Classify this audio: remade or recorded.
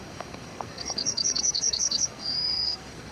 remade